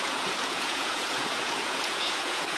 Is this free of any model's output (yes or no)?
no